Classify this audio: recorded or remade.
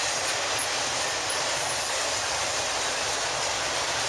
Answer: recorded